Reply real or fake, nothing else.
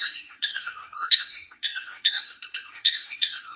fake